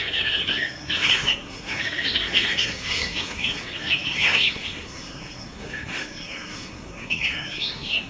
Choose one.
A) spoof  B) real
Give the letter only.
A